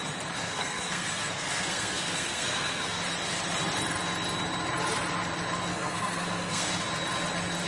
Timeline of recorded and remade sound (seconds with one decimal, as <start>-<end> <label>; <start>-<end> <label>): 0.0-0.4 recorded; 0.4-3.0 remade; 3.0-5.7 recorded; 5.7-6.7 remade; 6.7-7.7 recorded